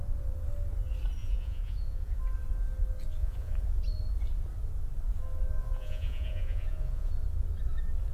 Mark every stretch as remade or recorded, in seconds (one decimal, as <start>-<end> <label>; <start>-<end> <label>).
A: 0.0-1.2 recorded; 1.2-2.2 remade; 2.2-3.2 recorded; 3.2-3.8 remade; 3.8-5.6 recorded; 5.6-7.1 remade; 7.1-8.1 recorded